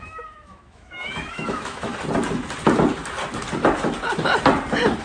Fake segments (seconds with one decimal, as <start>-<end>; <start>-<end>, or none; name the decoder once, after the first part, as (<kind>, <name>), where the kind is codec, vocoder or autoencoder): 0.0-1.9 (autoencoder, DAC-VAE)